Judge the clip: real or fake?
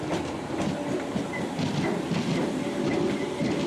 real